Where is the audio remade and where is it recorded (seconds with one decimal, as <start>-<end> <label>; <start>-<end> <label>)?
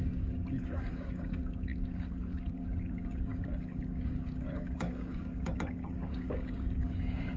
0.0-7.4 remade